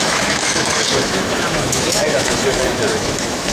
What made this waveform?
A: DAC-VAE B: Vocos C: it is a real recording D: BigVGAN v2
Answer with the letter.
A